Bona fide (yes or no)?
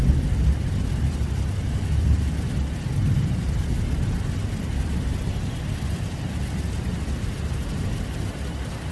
yes